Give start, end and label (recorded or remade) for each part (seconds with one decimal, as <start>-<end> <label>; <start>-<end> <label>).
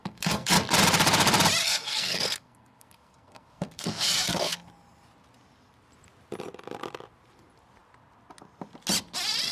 0.0-0.5 remade; 0.5-1.6 recorded; 1.6-4.7 remade; 4.7-9.5 recorded